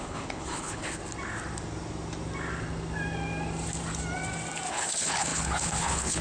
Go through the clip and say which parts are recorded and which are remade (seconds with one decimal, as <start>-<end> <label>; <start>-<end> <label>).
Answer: 0.0-1.0 remade; 1.0-4.7 recorded; 4.7-6.2 remade